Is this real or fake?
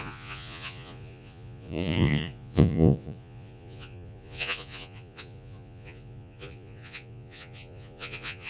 fake